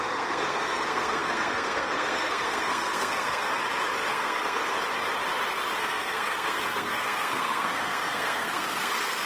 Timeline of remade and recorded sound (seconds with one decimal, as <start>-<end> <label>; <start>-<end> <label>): 0.0-3.5 remade; 3.5-4.1 recorded; 4.1-4.6 remade; 4.6-5.8 recorded; 5.8-9.3 remade